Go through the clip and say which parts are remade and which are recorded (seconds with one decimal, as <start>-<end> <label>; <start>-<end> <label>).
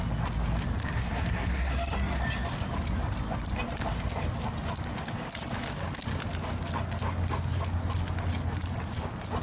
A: 0.0-0.8 recorded; 0.8-1.7 remade; 1.7-9.4 recorded